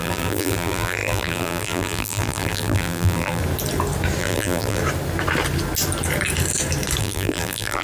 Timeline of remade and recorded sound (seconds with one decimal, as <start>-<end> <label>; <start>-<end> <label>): 0.0-3.4 remade; 3.4-4.2 recorded; 4.2-4.8 remade; 4.8-7.0 recorded; 7.0-7.8 remade